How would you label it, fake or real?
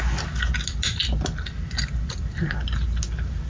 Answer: real